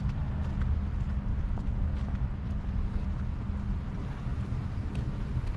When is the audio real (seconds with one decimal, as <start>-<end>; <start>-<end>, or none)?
0.0-1.3; 3.2-3.7